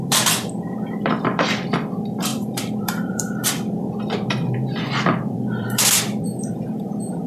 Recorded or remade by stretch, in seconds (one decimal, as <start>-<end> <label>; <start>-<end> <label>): 0.0-7.3 remade